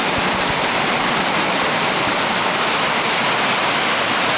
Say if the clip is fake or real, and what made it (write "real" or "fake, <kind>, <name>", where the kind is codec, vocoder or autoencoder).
real